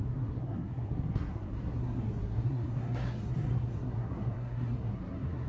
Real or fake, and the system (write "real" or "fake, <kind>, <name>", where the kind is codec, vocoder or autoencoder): fake, codec, SNAC